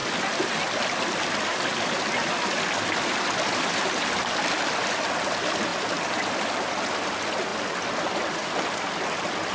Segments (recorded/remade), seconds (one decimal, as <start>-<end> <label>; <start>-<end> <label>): 0.0-5.7 recorded; 5.7-6.7 remade; 6.7-7.5 recorded; 7.5-8.9 remade; 8.9-9.5 recorded